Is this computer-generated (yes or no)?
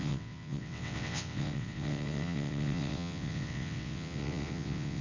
yes